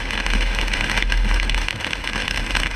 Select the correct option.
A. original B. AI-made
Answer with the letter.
B